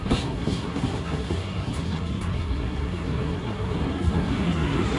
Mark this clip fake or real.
fake